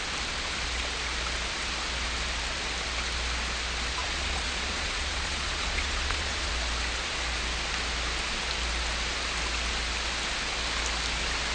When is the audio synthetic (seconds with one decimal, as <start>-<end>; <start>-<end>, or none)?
4.0-6.5